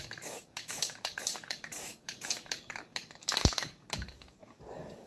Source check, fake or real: fake